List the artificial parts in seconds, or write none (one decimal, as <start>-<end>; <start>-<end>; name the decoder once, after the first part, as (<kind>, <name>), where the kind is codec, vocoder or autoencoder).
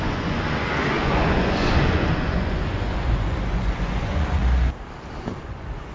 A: 0.0-4.4 (vocoder, Vocos); 5.1-5.9